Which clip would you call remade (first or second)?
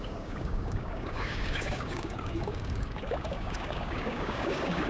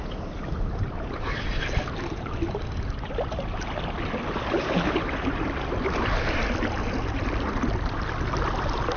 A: first